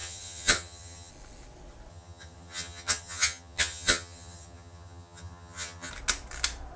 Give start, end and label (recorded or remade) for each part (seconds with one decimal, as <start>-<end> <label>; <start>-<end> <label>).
0.0-1.1 remade; 1.1-1.9 recorded; 1.9-5.9 remade; 5.9-6.8 recorded